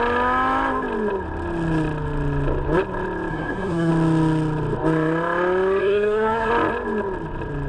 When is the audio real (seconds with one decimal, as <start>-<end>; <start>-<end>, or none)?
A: 0.0-3.3; 3.9-5.8; 6.5-7.7